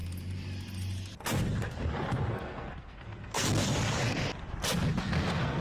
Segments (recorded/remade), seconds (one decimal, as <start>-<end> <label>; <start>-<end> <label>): 0.0-2.3 recorded; 2.3-3.6 remade; 3.6-5.0 recorded; 5.0-5.6 remade